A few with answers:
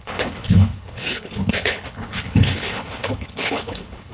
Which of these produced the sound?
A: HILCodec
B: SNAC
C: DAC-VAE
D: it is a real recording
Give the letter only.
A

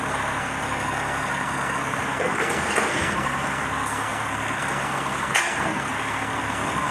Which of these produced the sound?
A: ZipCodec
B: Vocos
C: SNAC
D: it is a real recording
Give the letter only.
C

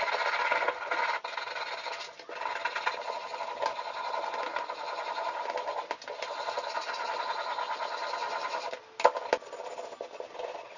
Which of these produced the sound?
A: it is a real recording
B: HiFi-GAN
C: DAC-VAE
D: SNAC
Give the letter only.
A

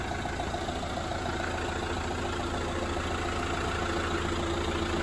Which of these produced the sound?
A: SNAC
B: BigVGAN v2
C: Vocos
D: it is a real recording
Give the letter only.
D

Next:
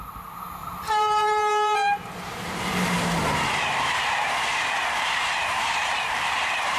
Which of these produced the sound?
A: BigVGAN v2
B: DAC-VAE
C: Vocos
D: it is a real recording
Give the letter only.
A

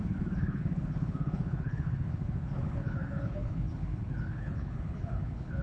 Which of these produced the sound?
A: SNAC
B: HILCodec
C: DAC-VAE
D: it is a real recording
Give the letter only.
B